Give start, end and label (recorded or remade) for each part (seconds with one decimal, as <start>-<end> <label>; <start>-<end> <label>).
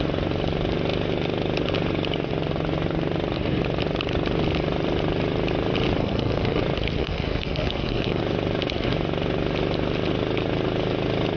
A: 0.0-6.0 recorded; 6.0-6.6 remade; 6.6-7.0 recorded; 7.0-8.2 remade; 8.2-11.4 recorded